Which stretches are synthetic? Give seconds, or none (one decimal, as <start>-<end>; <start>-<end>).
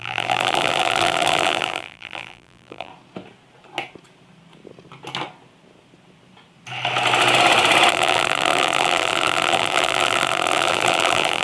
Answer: 0.0-2.9; 7.9-11.4